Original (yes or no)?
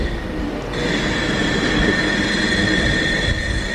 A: yes